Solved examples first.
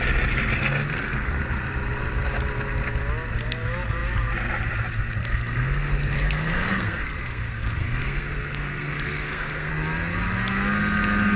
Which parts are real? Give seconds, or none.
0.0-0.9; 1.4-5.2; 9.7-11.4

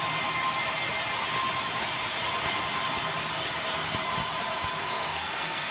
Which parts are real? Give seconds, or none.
0.0-4.8